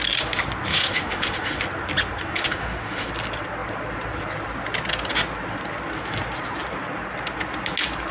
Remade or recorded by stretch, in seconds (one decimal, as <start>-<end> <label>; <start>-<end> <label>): 0.0-0.7 recorded; 0.7-1.6 remade; 1.6-2.3 recorded; 2.3-3.1 remade; 3.1-8.1 recorded